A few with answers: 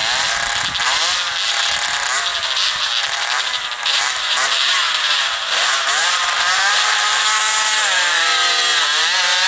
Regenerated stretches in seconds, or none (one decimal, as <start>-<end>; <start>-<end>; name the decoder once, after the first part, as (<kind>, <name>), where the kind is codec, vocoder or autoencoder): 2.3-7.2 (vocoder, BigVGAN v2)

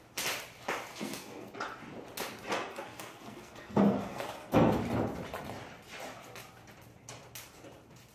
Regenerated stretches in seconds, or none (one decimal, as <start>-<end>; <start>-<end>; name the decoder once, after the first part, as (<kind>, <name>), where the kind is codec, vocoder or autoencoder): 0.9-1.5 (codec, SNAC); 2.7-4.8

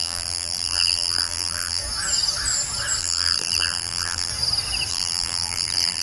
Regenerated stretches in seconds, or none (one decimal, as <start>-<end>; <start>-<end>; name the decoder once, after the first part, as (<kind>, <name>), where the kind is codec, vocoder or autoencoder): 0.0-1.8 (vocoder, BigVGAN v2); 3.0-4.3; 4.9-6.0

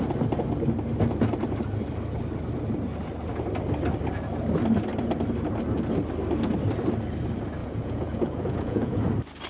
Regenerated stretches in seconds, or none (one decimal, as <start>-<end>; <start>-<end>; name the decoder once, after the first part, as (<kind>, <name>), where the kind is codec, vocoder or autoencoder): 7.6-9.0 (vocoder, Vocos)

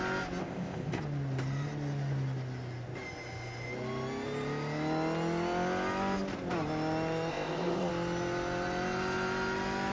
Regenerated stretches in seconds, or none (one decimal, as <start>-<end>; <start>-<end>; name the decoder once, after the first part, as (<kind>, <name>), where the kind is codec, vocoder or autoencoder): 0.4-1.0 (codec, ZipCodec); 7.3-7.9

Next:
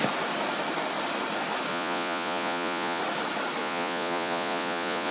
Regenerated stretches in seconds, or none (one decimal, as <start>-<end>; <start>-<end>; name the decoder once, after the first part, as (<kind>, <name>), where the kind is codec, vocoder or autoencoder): 1.7-3.0 (vocoder, Vocos); 3.6-5.1

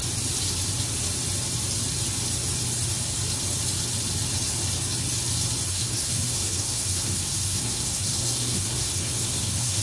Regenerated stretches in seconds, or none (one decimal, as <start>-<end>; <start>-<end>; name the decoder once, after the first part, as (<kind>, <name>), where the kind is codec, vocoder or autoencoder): 5.7-9.8 (codec, SNAC)

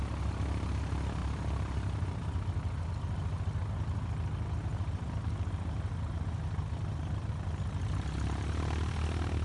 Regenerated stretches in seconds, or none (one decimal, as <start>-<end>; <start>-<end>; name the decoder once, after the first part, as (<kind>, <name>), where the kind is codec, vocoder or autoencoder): 1.2-2.9 (vocoder, BigVGAN v2); 4.7-7.3